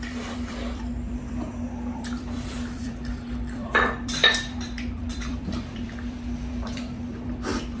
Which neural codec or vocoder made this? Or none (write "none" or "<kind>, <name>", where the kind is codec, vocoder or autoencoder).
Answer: vocoder, BigVGAN v2